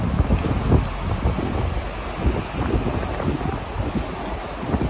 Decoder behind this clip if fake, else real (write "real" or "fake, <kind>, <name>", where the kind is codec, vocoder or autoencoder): real